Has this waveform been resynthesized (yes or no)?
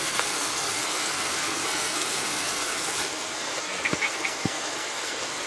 yes